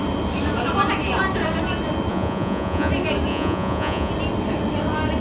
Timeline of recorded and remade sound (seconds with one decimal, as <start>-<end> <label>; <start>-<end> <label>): 0.0-2.1 recorded; 2.1-2.9 remade; 2.9-3.3 recorded; 3.3-4.1 remade; 4.1-5.2 recorded